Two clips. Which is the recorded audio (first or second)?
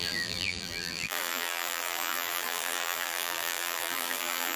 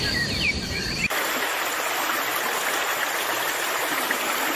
second